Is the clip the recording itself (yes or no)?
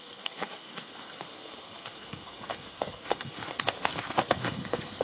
no